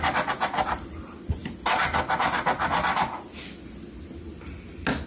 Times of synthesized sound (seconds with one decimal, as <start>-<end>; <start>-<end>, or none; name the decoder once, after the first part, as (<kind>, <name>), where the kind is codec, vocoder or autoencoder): none